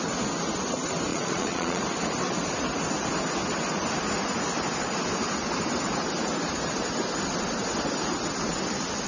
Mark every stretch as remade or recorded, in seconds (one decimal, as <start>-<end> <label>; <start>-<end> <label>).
0.0-1.1 recorded; 1.1-1.8 remade; 1.8-9.1 recorded